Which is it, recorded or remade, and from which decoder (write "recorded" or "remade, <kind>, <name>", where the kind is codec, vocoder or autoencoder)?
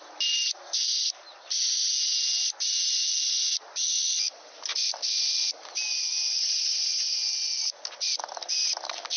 recorded